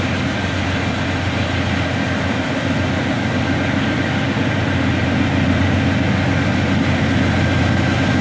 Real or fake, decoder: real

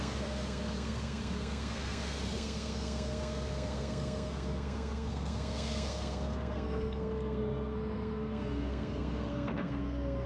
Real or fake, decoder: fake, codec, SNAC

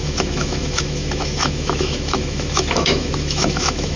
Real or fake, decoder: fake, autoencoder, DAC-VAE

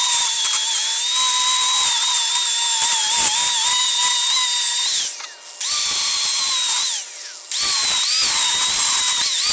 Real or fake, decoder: real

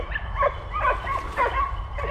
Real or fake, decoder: real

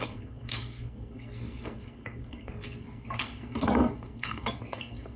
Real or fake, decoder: fake, codec, SNAC